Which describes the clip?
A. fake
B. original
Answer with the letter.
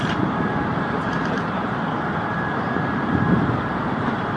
A